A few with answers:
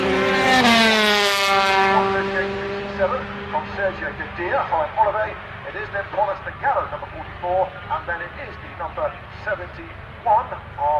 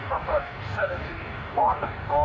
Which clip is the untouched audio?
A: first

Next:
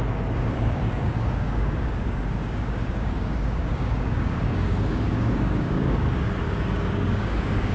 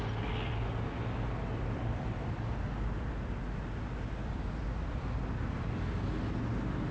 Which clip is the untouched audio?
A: second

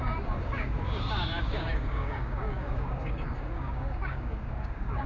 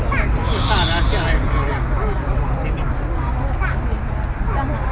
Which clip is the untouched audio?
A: second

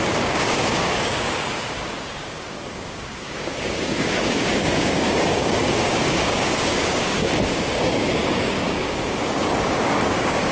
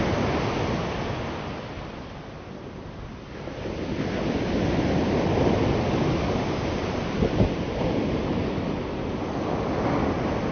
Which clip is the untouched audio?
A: second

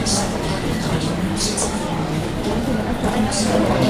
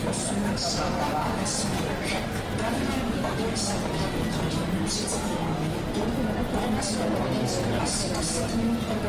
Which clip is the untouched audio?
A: second